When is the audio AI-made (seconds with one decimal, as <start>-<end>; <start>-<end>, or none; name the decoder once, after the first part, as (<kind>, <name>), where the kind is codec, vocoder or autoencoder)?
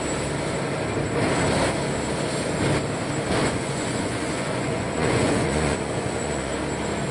3.4-6.5 (vocoder, Vocos)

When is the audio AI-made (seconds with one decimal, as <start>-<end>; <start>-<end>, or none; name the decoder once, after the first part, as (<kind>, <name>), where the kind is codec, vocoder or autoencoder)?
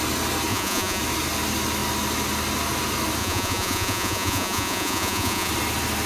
0.5-1.0 (vocoder, Vocos); 3.2-5.5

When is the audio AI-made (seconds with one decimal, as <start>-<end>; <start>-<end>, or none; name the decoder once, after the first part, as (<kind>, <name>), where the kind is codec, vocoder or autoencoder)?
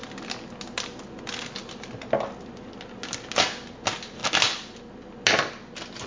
none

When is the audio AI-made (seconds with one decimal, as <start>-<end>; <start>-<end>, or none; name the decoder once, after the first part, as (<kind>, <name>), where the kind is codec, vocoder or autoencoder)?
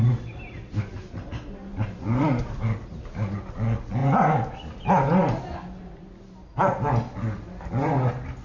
none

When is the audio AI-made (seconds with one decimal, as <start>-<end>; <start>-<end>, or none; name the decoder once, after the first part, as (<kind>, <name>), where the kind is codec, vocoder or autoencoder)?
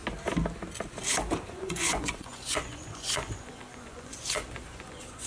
1.5-5.3 (vocoder, Vocos)